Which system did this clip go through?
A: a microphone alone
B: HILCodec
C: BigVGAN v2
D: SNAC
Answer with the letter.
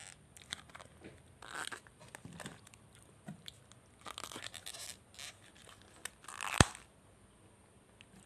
A